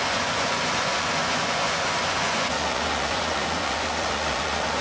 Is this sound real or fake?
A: fake